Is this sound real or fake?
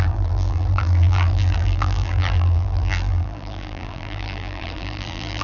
fake